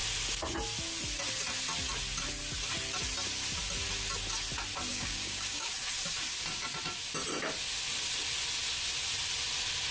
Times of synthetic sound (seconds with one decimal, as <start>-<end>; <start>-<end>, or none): 4.9-5.7